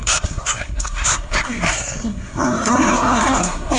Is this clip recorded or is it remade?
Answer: remade